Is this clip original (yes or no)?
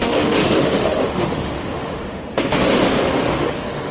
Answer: no